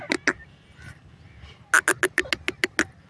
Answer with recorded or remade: recorded